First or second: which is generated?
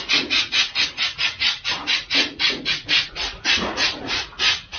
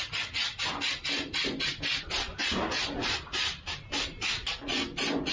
first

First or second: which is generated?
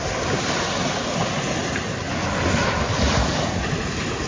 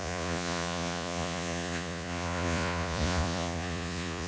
second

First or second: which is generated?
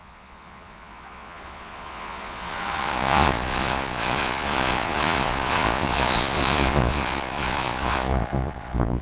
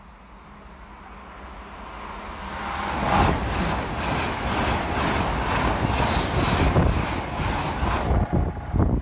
first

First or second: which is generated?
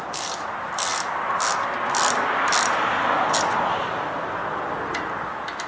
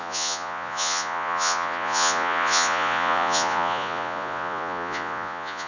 second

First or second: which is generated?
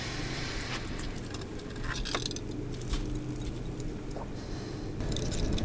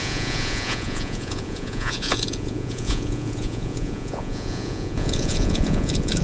second